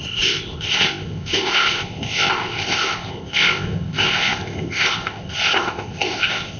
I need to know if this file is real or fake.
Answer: fake